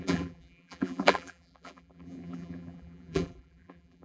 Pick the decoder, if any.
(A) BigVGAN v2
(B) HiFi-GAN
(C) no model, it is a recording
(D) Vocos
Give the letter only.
A